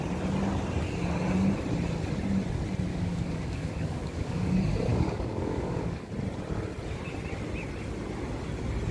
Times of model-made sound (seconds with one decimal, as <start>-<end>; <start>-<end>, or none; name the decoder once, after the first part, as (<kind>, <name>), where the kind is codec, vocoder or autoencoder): 2.9-4.5 (codec, DAC); 4.9-6.1